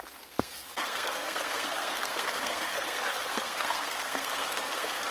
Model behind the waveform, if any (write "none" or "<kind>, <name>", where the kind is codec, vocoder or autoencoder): codec, SNAC